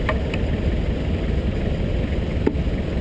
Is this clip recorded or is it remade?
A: recorded